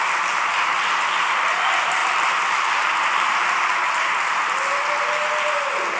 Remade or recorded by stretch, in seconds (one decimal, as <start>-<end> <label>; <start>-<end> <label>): 0.0-6.0 recorded